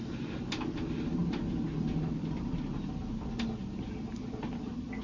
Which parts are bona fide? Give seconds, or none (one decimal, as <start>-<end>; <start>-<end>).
0.0-5.0